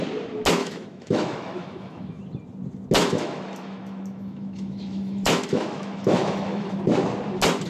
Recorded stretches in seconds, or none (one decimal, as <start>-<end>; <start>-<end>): 0.0-0.6; 2.2-3.0; 6.8-7.7